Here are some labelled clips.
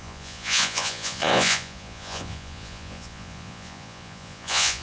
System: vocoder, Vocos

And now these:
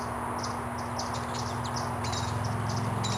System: none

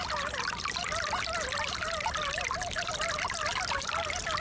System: none